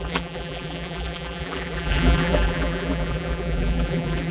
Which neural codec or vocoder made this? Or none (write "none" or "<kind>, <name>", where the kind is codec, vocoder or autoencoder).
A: vocoder, BigVGAN v2